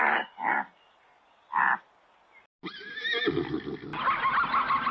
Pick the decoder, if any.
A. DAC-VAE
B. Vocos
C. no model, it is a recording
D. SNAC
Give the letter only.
C